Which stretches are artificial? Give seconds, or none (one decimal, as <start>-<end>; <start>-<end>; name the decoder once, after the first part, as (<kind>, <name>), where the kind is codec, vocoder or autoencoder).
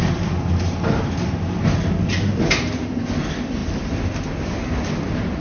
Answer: 3.6-4.3 (vocoder, BigVGAN v2)